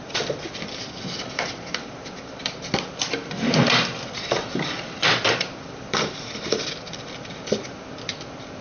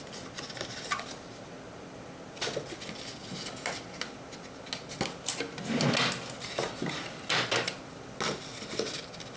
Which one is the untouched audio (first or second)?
second